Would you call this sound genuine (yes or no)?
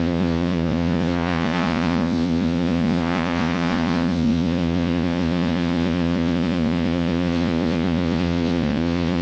no